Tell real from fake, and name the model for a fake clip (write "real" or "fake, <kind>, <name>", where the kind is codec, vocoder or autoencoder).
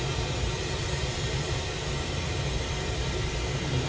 real